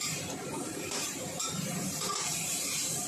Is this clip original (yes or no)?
no